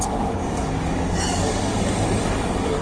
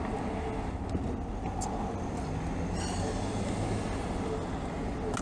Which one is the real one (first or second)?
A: second